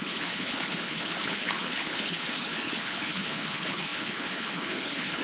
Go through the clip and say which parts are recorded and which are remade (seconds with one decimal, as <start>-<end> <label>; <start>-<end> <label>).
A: 0.0-5.2 remade